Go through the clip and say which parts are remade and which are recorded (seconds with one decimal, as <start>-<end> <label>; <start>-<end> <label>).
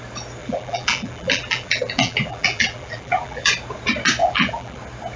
0.0-0.4 recorded; 0.4-3.5 remade; 3.5-4.2 recorded; 4.2-4.8 remade; 4.8-5.2 recorded